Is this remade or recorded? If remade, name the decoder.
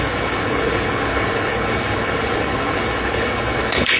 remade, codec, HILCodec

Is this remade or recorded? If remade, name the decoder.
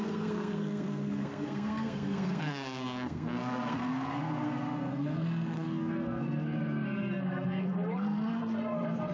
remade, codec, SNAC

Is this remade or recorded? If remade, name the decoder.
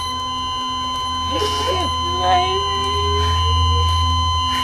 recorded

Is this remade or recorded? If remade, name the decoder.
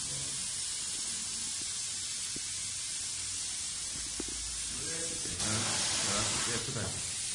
recorded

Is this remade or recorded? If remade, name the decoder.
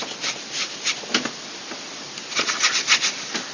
recorded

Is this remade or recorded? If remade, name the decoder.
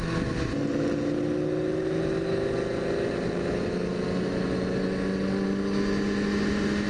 recorded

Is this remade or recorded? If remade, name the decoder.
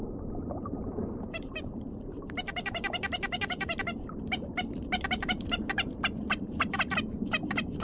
remade, vocoder, BigVGAN v2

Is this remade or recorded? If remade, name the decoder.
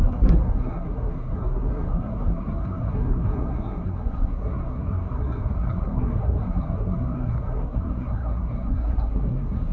remade, codec, SNAC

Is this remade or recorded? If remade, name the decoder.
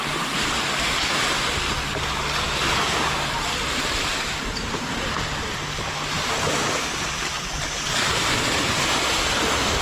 recorded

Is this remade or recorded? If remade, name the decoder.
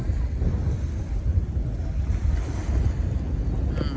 recorded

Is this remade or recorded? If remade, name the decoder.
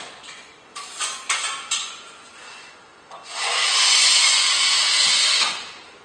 remade, vocoder, Vocos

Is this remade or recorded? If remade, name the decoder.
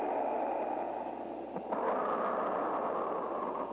recorded